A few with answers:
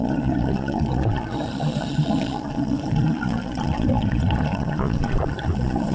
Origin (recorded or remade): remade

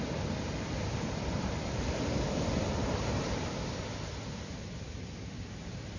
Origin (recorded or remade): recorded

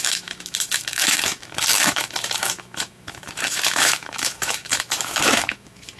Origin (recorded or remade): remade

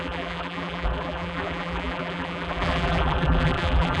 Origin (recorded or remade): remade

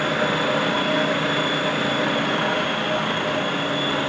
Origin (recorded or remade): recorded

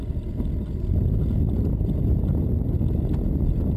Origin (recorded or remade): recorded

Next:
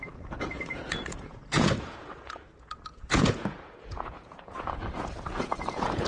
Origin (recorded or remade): remade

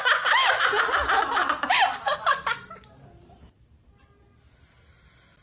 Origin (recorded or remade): recorded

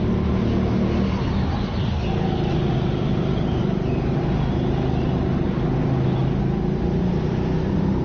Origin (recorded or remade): recorded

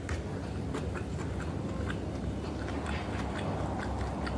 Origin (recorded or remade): recorded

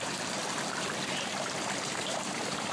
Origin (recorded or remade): remade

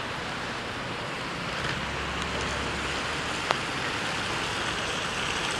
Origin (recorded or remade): recorded